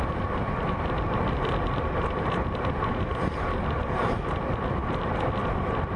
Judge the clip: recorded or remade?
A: recorded